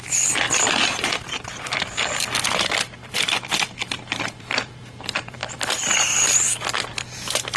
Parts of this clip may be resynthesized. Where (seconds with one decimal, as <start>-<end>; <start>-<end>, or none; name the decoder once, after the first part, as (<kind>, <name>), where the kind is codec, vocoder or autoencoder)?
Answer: 0.0-5.4 (vocoder, BigVGAN v2); 6.9-7.6